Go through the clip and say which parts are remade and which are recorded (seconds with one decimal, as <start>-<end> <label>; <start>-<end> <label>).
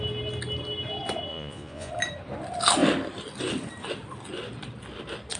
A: 0.0-1.3 recorded; 1.3-1.9 remade; 1.9-5.4 recorded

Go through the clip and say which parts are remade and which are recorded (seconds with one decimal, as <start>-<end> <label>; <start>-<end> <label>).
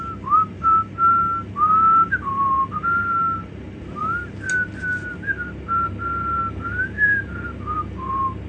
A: 0.0-8.5 recorded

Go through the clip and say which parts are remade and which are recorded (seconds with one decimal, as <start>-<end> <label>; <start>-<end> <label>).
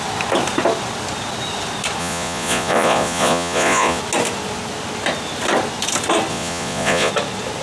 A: 0.0-2.0 recorded; 2.0-4.0 remade; 4.0-6.3 recorded; 6.3-7.1 remade; 7.1-7.6 recorded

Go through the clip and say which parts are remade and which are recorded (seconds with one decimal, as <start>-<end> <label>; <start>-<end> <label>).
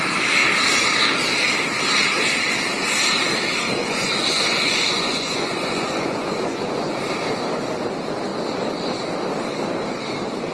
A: 0.0-3.8 recorded; 3.8-6.9 remade; 6.9-10.5 recorded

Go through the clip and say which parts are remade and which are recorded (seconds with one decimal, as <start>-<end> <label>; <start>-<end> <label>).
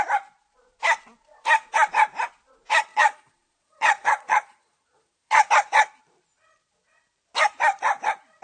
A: 0.0-2.9 recorded; 2.9-5.5 remade; 5.5-8.4 recorded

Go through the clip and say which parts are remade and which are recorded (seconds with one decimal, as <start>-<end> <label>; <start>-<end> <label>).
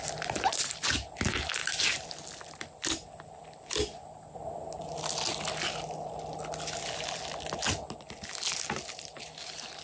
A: 0.0-9.8 recorded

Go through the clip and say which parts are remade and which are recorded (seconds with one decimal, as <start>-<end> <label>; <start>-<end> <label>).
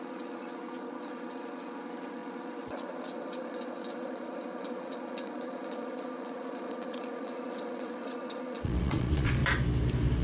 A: 0.0-9.4 remade; 9.4-10.2 recorded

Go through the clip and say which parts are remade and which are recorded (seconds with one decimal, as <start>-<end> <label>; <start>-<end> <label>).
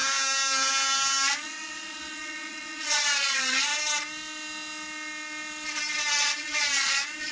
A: 0.0-1.3 recorded; 1.3-3.7 remade; 3.7-6.2 recorded; 6.2-7.3 remade